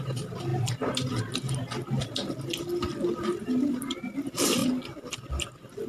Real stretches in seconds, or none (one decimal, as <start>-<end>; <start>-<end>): none